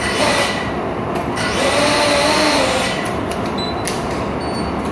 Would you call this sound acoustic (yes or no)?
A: yes